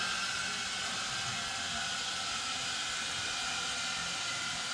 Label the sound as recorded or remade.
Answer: recorded